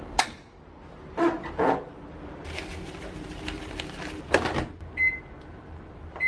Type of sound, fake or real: real